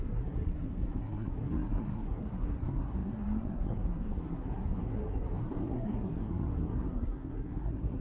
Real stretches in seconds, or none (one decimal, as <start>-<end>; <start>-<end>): none